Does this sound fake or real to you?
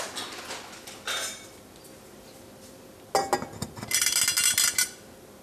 real